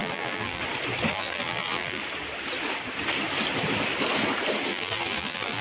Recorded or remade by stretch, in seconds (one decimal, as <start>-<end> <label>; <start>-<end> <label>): 0.0-0.6 remade; 0.6-1.1 recorded; 1.1-2.0 remade; 2.0-4.7 recorded; 4.7-5.6 remade